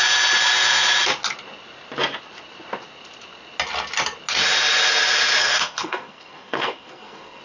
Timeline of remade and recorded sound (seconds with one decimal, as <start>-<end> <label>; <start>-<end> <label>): 0.0-5.4 recorded; 5.4-7.4 remade